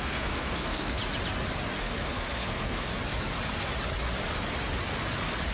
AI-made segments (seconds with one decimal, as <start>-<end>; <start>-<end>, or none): 0.0-1.0; 1.8-2.9